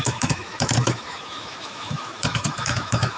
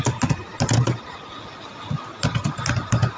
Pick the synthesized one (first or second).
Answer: first